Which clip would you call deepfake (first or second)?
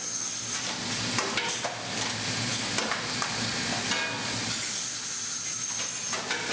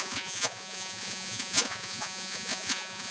second